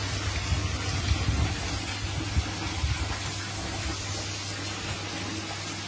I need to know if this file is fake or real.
real